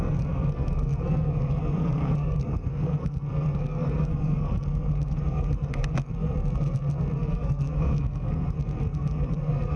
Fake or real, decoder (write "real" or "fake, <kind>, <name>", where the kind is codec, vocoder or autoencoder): fake, codec, SNAC